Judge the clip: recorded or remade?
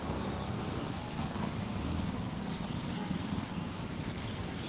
remade